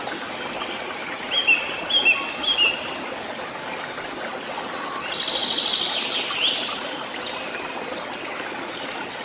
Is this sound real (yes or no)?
yes